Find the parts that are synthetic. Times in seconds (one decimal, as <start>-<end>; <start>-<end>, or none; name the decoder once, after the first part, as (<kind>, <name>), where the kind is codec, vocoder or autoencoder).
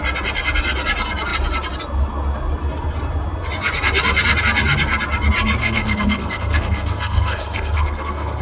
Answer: 5.6-8.4 (codec, SNAC)